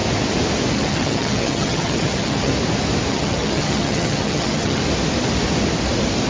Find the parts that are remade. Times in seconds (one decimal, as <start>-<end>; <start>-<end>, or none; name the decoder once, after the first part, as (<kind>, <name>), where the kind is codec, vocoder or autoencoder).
0.7-2.5 (vocoder, HiFi-GAN); 3.1-4.8